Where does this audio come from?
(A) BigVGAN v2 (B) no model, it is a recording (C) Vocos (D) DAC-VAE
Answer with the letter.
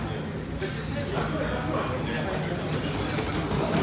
B